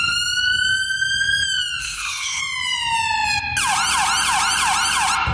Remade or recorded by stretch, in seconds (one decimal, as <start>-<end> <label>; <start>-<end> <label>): 0.0-1.8 recorded; 1.8-2.4 remade; 2.4-5.3 recorded